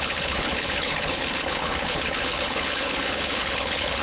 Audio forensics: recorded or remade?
remade